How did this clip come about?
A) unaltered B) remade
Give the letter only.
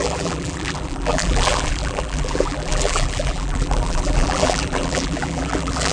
B